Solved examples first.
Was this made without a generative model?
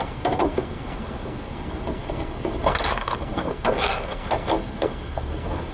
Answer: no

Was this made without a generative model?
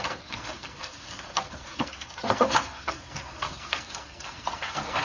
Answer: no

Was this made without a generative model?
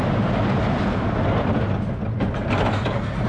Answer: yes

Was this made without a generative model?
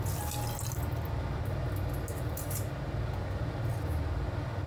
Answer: yes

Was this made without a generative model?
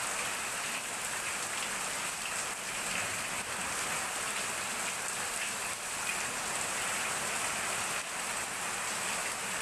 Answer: yes